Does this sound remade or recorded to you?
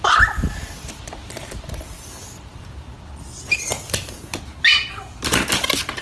recorded